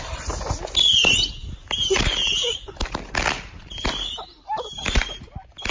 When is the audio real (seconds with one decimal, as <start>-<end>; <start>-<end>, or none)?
0.0-5.7